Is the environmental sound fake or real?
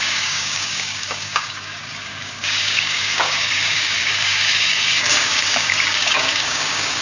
fake